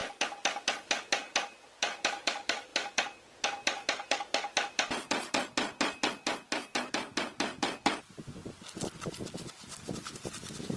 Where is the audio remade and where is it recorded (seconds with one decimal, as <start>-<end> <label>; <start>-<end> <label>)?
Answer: 0.0-10.8 recorded